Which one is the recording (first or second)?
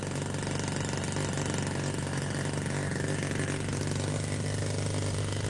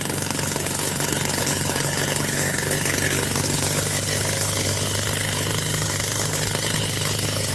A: first